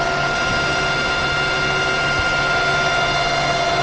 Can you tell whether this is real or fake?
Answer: real